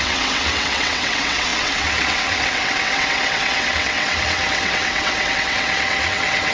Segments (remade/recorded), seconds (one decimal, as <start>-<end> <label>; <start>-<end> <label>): 0.0-6.5 remade